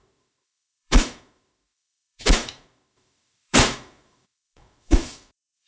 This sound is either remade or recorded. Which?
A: remade